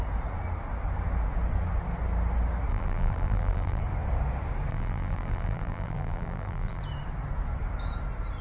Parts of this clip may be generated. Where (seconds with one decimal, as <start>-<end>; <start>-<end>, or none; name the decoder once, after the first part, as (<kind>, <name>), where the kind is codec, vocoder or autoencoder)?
2.7-3.8 (vocoder, BigVGAN v2); 4.7-6.8